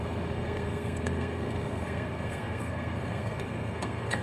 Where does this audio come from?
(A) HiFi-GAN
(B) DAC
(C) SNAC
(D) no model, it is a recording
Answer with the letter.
C